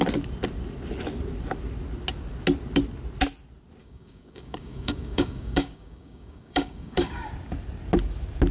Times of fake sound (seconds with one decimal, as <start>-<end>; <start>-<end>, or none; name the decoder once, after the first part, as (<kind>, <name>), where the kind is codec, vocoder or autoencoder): 3.8-7.3 (codec, DAC)